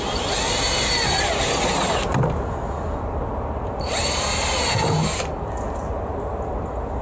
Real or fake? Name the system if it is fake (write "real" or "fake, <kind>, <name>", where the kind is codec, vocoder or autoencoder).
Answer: real